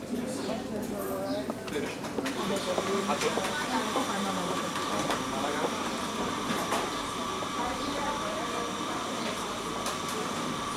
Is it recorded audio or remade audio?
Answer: remade